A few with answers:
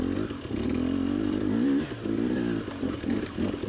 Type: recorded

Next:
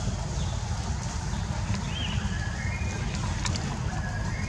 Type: recorded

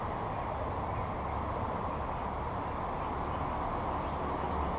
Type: recorded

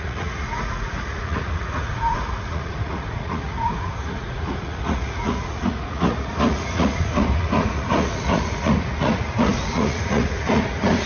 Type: remade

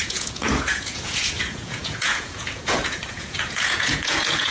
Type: remade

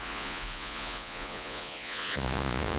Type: remade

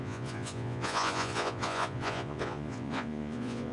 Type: remade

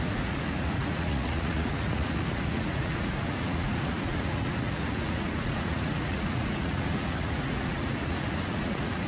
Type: remade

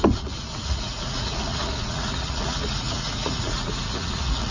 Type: remade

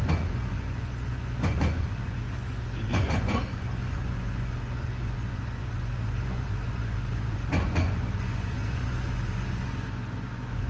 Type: remade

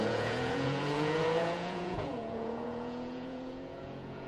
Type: remade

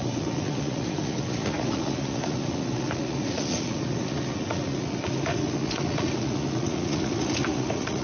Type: remade